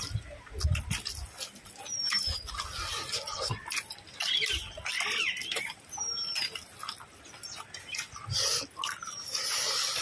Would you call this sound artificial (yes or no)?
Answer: no